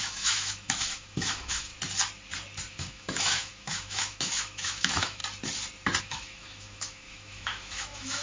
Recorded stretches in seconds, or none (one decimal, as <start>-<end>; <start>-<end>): 1.7-2.7; 5.2-6.0